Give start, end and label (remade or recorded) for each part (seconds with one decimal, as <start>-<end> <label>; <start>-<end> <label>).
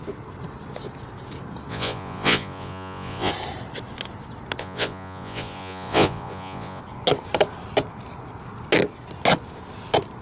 0.0-1.7 recorded; 1.7-3.3 remade; 3.3-4.6 recorded; 4.6-6.8 remade; 6.8-10.2 recorded